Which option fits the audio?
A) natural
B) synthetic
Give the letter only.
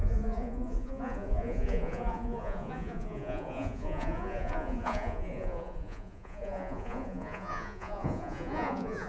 B